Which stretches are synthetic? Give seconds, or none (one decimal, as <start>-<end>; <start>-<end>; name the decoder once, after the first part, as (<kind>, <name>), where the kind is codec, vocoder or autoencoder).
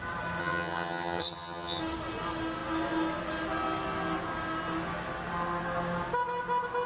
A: 0.4-1.8 (vocoder, HiFi-GAN)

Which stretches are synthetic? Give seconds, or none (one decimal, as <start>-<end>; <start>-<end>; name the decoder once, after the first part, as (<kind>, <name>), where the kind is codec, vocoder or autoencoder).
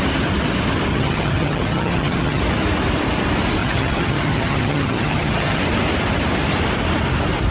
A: 0.9-2.4 (vocoder, HiFi-GAN); 3.6-5.6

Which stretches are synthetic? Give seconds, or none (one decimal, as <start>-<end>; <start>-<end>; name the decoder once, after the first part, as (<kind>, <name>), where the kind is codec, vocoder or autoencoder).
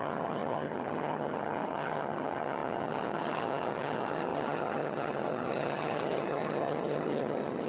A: 0.0-7.7 (vocoder, HiFi-GAN)